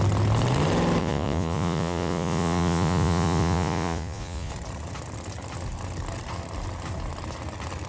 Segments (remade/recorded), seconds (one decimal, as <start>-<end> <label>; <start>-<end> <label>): 0.0-1.0 recorded; 1.0-4.5 remade; 4.5-7.9 recorded